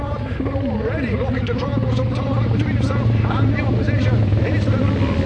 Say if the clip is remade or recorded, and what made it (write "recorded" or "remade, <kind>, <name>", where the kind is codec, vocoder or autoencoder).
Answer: recorded